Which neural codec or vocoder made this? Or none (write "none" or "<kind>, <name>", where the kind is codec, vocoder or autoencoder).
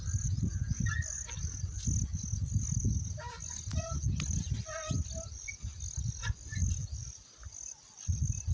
none